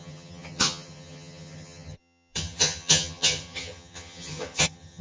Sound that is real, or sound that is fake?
fake